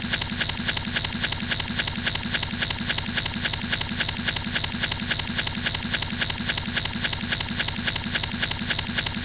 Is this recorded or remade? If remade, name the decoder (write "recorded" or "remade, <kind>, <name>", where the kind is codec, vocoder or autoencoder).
recorded